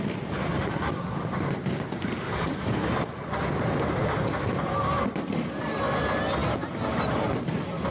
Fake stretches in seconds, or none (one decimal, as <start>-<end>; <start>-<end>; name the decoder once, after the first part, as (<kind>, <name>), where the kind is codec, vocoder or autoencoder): none